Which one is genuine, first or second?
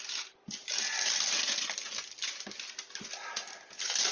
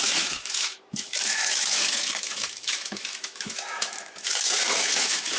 first